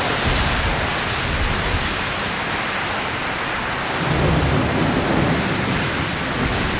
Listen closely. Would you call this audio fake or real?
real